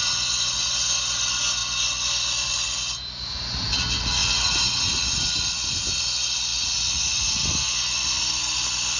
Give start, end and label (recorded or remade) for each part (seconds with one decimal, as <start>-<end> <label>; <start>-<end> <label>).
0.0-9.0 recorded